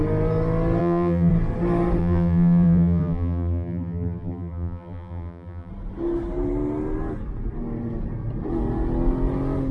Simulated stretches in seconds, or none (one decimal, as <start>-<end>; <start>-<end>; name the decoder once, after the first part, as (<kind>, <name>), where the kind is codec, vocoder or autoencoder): 0.8-1.3 (vocoder, BigVGAN v2); 2.0-5.7